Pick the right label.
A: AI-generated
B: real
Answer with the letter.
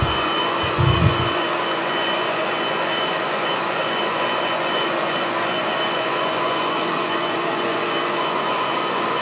A